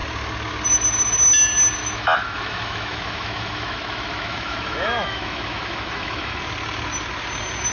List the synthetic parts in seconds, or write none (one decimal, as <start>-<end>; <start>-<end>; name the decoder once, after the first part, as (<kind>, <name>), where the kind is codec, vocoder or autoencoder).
1.8-6.4 (autoencoder, DAC-VAE)